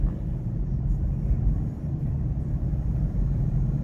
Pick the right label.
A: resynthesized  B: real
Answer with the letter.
B